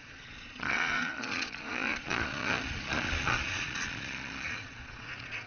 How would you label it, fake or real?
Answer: fake